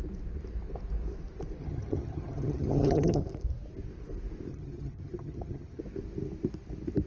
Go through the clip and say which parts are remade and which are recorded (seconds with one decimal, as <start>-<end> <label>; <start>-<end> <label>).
0.0-1.6 recorded; 1.6-3.2 remade; 3.2-4.5 recorded; 4.5-5.8 remade; 5.8-7.1 recorded